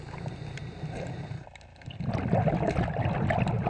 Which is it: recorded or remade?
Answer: recorded